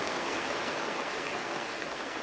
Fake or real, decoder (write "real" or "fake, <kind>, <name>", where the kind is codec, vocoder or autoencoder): fake, codec, SNAC